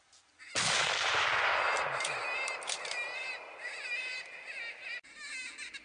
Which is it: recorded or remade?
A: recorded